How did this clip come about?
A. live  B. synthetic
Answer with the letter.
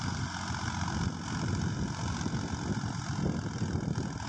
A